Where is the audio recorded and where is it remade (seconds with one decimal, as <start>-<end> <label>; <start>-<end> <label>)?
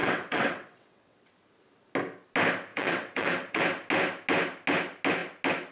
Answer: 0.0-1.3 remade; 1.3-2.7 recorded; 2.7-3.6 remade; 3.6-5.7 recorded